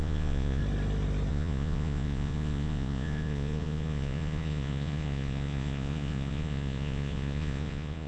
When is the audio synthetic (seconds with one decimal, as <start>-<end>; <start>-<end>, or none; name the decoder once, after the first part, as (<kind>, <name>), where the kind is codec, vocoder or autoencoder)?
0.0-0.6 (vocoder, Vocos); 1.3-8.1